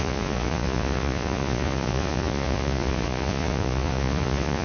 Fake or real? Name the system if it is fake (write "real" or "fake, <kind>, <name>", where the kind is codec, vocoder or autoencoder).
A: fake, vocoder, Vocos